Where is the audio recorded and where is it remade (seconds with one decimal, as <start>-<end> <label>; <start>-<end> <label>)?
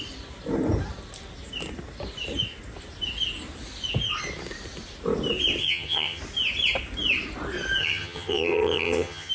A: 0.0-5.6 recorded; 5.6-6.2 remade; 6.2-7.8 recorded; 7.8-9.3 remade